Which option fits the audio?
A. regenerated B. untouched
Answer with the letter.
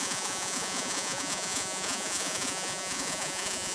A